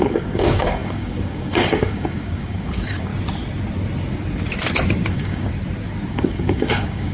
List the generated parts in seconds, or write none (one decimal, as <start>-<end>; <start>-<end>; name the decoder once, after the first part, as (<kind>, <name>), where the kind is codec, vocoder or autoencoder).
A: 0.0-3.1 (codec, DAC); 5.1-5.5; 6.1-7.1